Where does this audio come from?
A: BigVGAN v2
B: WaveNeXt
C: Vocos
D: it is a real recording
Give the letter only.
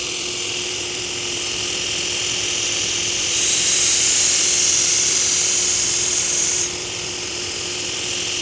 A